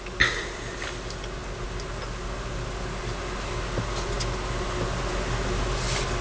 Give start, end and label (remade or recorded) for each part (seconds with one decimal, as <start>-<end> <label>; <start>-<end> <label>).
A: 0.0-6.2 recorded

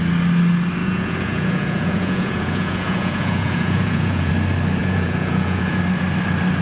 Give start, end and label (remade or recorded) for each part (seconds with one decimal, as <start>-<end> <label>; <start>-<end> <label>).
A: 0.0-0.8 recorded; 0.8-4.3 remade; 4.3-4.8 recorded; 4.8-5.8 remade; 5.8-6.6 recorded